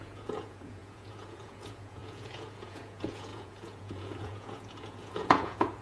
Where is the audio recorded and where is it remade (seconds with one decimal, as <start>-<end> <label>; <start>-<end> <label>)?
0.0-5.8 remade